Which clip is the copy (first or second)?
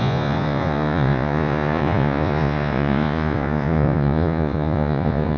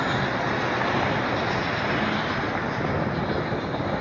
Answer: first